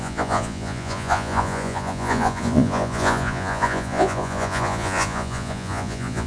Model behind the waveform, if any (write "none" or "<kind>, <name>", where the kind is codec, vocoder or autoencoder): vocoder, Vocos